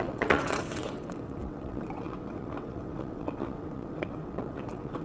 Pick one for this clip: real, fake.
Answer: fake